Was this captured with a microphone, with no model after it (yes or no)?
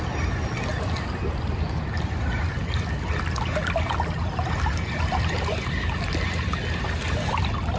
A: yes